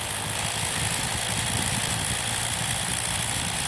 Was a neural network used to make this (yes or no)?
no